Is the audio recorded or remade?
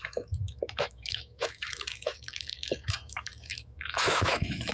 remade